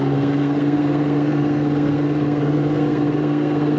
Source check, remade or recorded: remade